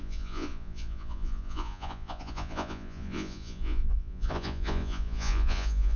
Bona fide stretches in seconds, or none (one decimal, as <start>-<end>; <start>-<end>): none